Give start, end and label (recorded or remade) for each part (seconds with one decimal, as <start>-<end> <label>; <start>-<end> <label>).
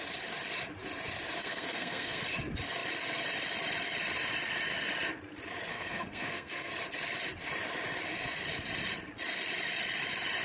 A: 0.0-1.4 recorded; 1.4-2.2 remade; 2.2-5.7 recorded; 5.7-6.7 remade; 6.7-10.4 recorded